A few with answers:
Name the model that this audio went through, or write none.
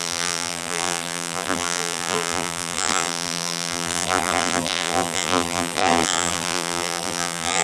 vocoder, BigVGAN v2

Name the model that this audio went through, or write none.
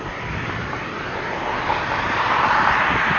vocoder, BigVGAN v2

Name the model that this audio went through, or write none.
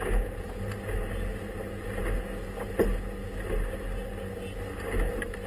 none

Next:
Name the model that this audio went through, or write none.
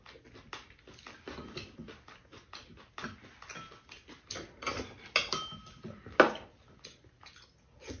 none